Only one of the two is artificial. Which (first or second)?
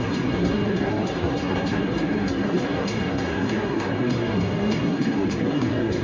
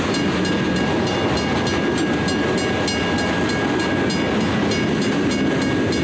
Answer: first